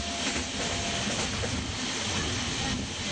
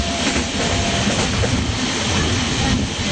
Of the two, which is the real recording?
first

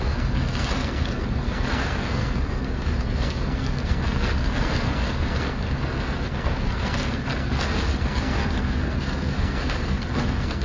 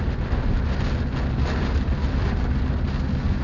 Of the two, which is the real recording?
second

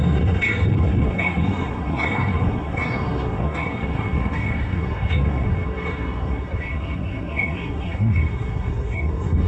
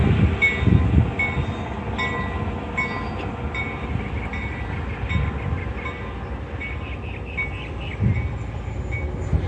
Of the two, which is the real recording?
second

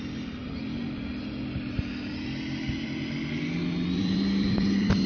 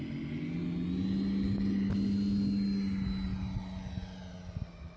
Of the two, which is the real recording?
second